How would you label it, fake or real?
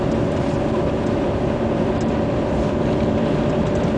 real